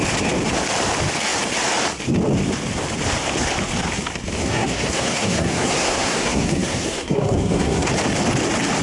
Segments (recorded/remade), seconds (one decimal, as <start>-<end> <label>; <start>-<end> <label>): 0.0-4.4 recorded; 4.4-7.9 remade; 7.9-8.8 recorded